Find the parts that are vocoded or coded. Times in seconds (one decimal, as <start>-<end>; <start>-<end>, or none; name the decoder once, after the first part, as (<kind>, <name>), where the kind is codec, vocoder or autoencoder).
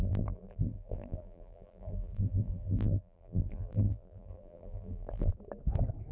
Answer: 0.0-5.3 (vocoder, BigVGAN v2)